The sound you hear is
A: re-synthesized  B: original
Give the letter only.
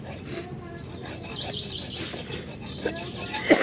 B